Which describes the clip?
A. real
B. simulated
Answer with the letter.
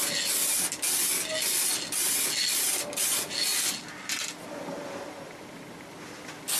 A